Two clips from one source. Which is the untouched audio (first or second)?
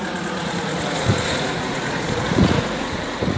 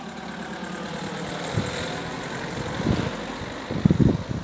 second